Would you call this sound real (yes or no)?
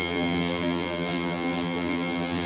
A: no